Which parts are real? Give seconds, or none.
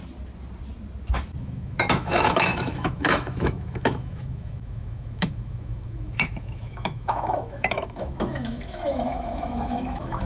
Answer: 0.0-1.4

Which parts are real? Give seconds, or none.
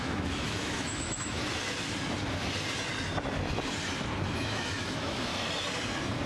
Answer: 1.4-4.3; 5.3-6.3